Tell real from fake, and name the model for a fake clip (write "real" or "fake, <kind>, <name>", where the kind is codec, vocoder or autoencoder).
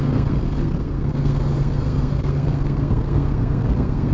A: fake, codec, SNAC